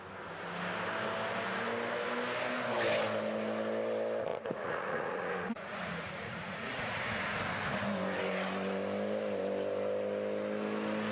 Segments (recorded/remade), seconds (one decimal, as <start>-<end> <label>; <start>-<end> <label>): 0.0-4.3 recorded; 4.3-7.0 remade; 7.0-11.1 recorded